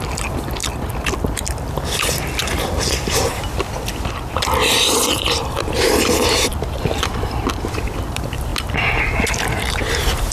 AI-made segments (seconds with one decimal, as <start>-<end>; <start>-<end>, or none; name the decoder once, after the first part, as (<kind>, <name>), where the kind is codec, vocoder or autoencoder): 0.0-2.4 (vocoder, BigVGAN v2); 3.5-8.5; 9.8-10.3